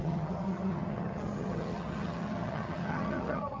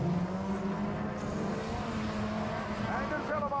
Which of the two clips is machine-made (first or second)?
first